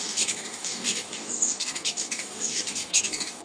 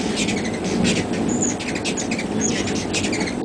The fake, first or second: first